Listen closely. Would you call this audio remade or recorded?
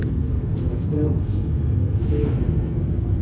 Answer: remade